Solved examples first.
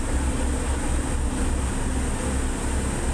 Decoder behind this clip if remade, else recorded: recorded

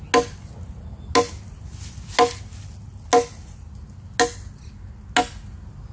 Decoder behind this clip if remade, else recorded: recorded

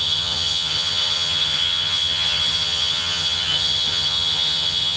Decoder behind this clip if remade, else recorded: remade, vocoder, HiFi-GAN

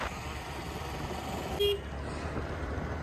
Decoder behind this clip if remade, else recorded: recorded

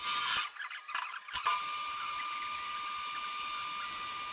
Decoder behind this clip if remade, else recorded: recorded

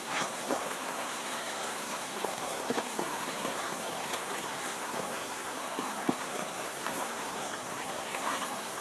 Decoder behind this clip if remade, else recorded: remade, codec, SNAC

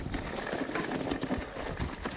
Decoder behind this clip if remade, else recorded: recorded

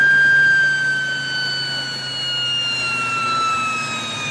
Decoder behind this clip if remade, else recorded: recorded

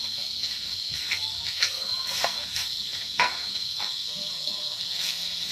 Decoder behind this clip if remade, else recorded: remade, codec, SNAC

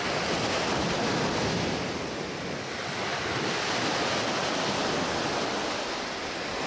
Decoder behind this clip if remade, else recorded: recorded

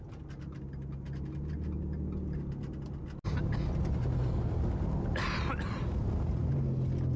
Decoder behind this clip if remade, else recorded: recorded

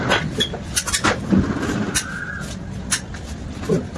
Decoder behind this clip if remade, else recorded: recorded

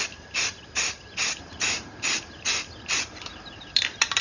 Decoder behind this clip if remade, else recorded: recorded